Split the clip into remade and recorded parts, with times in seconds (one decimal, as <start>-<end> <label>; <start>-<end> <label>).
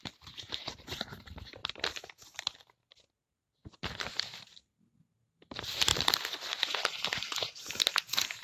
0.0-1.6 recorded; 1.6-3.1 remade; 3.1-3.6 recorded; 3.6-4.8 remade; 4.8-5.9 recorded; 5.9-7.8 remade; 7.8-8.4 recorded